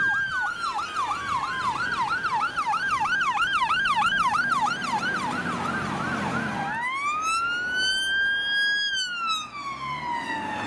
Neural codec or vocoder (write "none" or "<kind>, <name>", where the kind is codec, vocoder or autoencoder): none